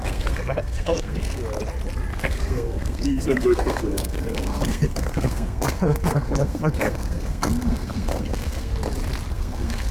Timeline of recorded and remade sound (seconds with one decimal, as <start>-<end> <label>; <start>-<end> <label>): 0.0-1.4 remade; 1.4-2.2 recorded; 2.2-8.7 remade; 8.7-9.3 recorded; 9.3-9.9 remade